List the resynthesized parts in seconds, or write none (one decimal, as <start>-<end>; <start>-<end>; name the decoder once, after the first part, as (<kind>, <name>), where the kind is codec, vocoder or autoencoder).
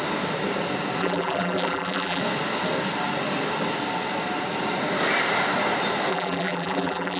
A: 1.0-2.2 (vocoder, BigVGAN v2); 6.1-7.2